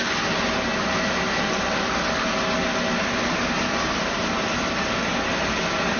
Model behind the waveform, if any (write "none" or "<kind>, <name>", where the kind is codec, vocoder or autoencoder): none